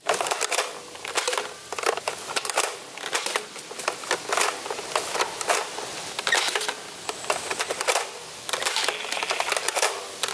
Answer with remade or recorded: recorded